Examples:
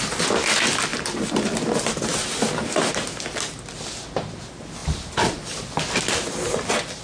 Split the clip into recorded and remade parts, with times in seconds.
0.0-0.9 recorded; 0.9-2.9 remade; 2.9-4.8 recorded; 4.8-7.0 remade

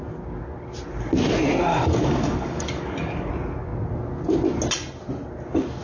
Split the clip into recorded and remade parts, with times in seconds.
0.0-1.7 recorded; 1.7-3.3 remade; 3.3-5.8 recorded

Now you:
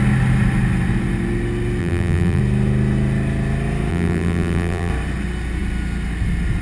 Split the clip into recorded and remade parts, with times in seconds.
0.0-1.8 recorded; 1.8-2.4 remade; 2.4-3.9 recorded; 3.9-4.9 remade; 4.9-6.6 recorded

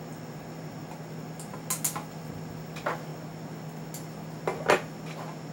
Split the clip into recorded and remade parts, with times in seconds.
0.0-5.5 recorded